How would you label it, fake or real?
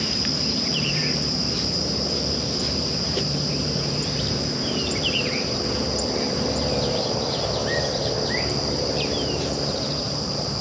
fake